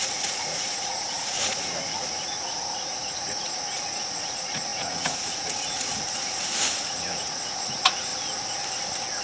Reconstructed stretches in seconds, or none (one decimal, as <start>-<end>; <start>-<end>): 0.0-8.1